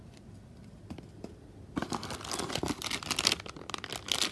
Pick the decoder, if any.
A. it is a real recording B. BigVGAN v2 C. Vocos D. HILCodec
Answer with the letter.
A